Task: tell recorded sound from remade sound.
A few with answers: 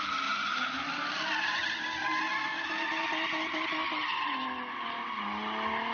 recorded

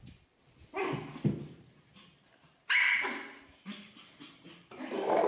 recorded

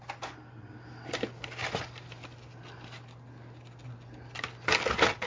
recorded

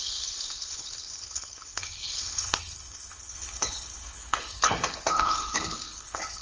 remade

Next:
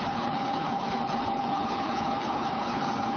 remade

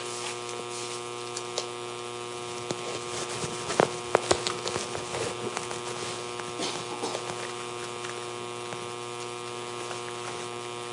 recorded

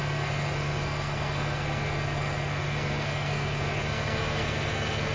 remade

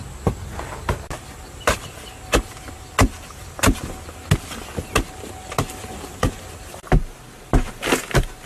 recorded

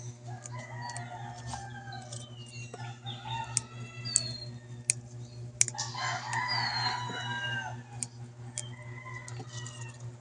recorded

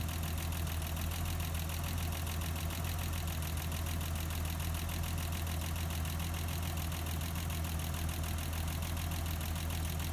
recorded